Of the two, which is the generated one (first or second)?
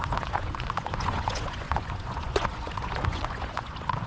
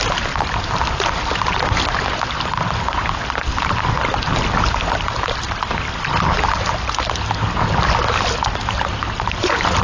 first